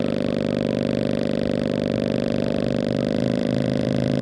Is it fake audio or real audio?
fake